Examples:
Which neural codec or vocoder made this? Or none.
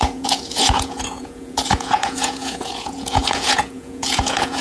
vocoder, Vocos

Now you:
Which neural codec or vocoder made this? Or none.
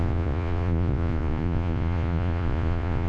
vocoder, Vocos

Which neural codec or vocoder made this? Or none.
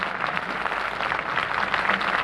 none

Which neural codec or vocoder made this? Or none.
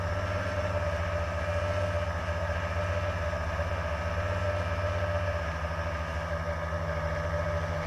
none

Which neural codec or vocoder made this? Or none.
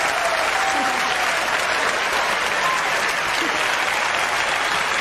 none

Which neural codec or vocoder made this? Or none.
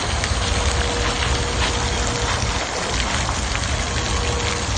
none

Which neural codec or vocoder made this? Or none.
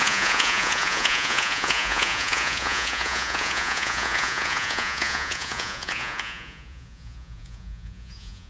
vocoder, Vocos